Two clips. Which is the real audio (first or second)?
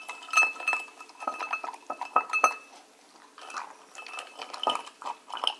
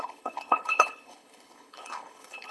first